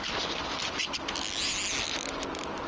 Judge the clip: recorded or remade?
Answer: recorded